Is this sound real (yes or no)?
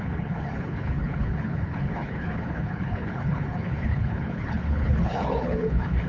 no